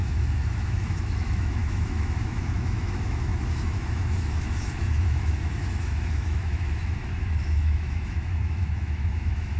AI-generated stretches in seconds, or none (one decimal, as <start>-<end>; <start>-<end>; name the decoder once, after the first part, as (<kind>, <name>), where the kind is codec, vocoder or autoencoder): 0.0-9.6 (autoencoder, DAC-VAE)